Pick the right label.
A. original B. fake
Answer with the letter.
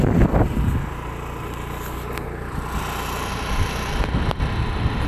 A